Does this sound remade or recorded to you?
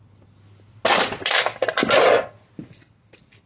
recorded